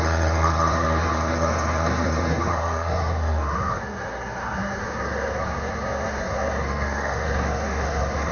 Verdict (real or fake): fake